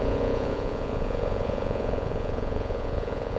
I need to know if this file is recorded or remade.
remade